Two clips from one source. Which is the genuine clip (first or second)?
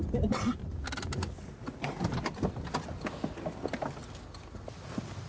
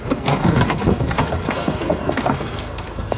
first